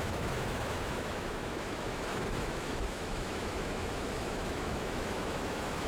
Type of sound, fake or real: fake